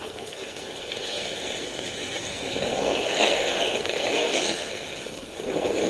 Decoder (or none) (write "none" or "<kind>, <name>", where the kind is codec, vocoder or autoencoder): codec, SNAC